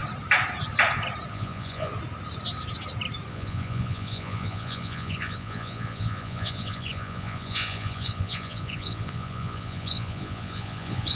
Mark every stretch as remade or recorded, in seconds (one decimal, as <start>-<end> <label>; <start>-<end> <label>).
0.0-1.3 recorded; 1.3-1.9 remade; 1.9-3.3 recorded; 3.3-11.2 remade